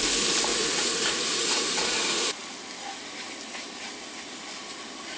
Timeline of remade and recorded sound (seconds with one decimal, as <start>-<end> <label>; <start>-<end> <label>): 0.0-0.5 recorded; 0.5-2.4 remade; 2.4-5.2 recorded